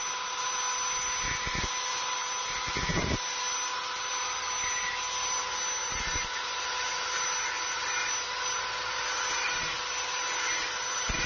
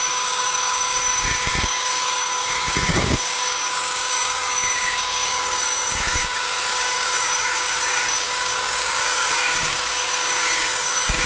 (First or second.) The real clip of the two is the first